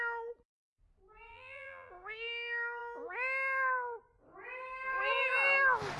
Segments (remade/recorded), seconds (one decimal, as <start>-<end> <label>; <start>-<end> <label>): 0.0-1.3 recorded; 1.3-1.9 remade; 1.9-6.0 recorded